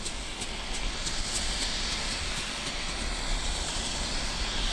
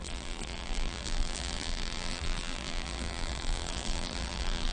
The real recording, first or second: first